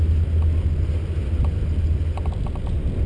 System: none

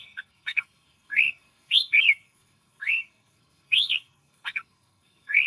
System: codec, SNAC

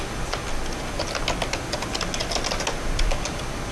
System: none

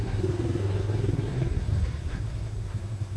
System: codec, SNAC